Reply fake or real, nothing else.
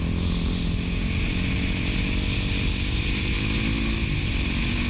real